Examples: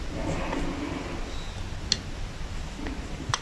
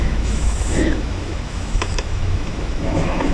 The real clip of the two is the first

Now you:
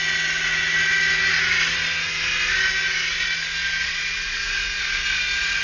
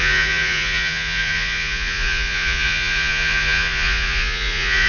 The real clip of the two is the first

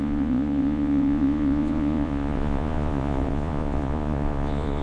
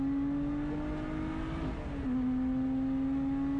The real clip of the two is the second